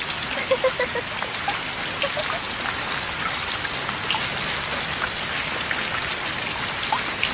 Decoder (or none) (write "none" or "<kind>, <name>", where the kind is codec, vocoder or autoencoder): none